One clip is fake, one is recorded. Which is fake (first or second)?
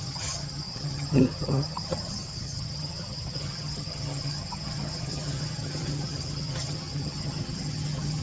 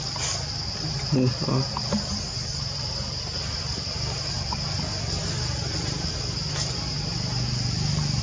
first